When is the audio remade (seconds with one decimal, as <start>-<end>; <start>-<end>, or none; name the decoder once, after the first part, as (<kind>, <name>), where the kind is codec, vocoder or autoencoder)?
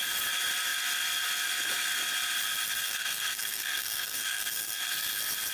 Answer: 2.8-4.9 (codec, SNAC)